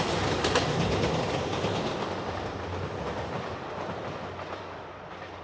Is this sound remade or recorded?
remade